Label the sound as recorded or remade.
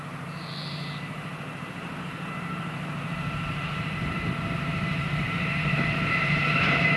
remade